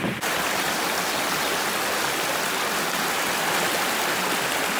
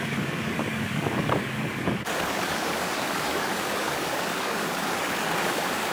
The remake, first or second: second